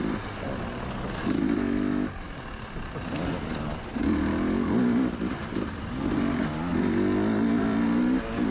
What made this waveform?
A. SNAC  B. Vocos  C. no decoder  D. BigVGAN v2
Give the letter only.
C